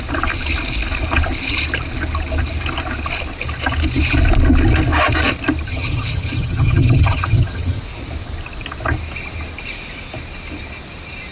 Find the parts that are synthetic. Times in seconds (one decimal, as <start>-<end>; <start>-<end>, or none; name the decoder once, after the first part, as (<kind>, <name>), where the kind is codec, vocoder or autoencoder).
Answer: 5.7-7.8 (vocoder, HiFi-GAN)